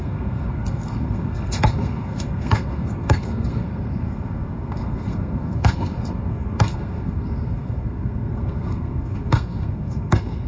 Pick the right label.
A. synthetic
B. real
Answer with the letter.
A